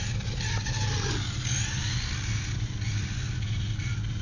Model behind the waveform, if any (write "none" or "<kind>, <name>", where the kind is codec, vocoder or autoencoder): none